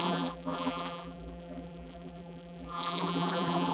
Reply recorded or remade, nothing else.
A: remade